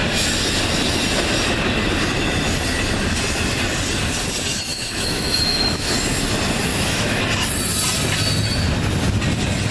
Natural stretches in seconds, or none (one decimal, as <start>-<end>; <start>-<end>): 0.0-4.7; 5.9-6.7; 7.2-9.7